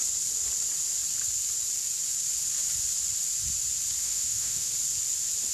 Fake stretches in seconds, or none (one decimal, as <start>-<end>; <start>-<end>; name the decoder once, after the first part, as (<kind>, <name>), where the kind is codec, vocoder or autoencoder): 4.0-4.7 (autoencoder, DAC-VAE)

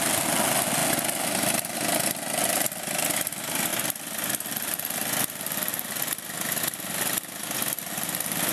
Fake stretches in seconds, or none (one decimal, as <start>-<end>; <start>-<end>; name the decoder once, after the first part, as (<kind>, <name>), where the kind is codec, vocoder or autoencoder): none

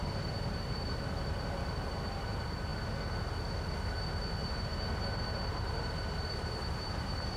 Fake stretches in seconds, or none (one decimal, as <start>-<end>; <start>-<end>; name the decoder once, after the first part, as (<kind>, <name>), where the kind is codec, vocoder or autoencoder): 0.0-2.7 (vocoder, BigVGAN v2); 3.9-7.4

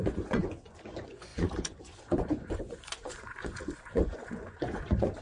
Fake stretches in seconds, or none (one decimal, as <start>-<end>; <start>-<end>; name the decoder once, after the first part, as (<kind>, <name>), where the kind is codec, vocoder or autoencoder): 0.0-5.2 (vocoder, Vocos)

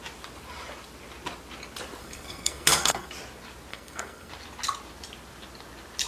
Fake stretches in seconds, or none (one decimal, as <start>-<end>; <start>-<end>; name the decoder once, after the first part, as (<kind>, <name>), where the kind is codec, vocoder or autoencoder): 2.0-3.1 (codec, SNAC); 3.7-4.3

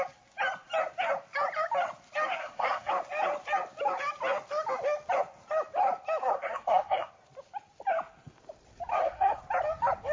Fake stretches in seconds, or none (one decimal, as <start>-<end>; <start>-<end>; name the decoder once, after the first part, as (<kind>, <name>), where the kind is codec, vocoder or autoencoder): 2.4-2.9 (codec, SNAC); 6.2-7.1; 8.9-9.4

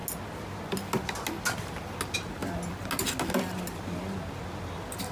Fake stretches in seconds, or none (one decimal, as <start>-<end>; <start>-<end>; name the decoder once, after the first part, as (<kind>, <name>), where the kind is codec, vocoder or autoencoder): none

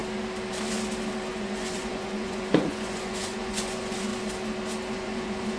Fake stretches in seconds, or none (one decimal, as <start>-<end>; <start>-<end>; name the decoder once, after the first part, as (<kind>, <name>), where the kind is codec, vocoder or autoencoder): 1.3-4.1 (vocoder, Vocos); 4.9-5.6